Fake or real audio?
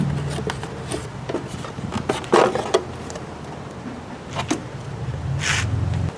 real